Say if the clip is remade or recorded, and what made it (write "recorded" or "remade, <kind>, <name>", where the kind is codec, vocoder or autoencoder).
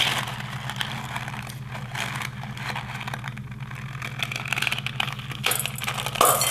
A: recorded